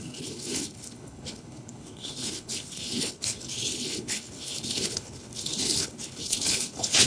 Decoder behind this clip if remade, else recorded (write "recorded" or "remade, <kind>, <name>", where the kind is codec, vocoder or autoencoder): remade, codec, HILCodec